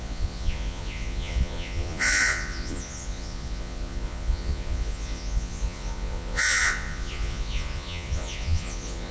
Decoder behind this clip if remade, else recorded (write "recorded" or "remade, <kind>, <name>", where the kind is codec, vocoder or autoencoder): remade, vocoder, Vocos